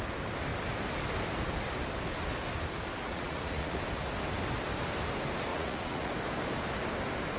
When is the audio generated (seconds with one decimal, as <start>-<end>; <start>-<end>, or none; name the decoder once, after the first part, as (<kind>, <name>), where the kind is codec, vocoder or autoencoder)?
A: 3.0-3.8 (vocoder, Vocos); 5.5-6.1

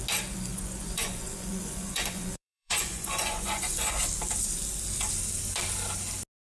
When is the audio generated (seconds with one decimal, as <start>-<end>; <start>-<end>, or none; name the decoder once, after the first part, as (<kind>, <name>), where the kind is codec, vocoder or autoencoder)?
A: 0.5-4.0 (vocoder, Vocos)

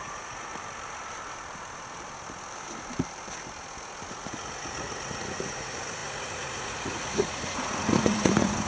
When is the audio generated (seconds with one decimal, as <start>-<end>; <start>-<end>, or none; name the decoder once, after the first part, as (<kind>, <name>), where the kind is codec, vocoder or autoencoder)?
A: 0.0-0.5 (vocoder, Vocos); 4.1-8.7

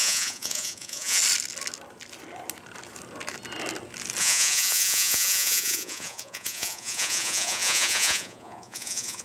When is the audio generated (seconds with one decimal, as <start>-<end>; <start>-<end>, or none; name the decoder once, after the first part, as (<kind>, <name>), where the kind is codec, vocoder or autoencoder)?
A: 0.0-1.2 (vocoder, Vocos); 4.2-9.2

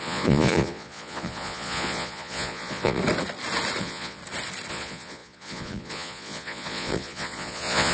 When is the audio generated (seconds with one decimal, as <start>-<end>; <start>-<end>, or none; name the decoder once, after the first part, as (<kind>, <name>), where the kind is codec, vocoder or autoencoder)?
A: 0.0-3.0 (vocoder, Vocos); 3.8-4.2; 4.7-7.9

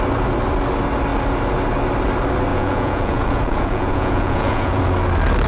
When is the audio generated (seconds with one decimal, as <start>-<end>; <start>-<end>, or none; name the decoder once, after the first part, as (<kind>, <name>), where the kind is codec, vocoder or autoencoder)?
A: 2.5-4.8 (vocoder, Vocos)

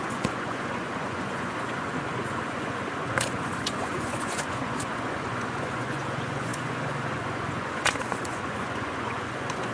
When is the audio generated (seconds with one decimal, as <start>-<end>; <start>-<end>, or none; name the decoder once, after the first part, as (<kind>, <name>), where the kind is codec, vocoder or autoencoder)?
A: 0.0-9.7 (vocoder, Vocos)

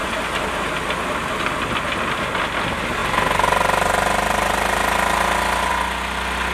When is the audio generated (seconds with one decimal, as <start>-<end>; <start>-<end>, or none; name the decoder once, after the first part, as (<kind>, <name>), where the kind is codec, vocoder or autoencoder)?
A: none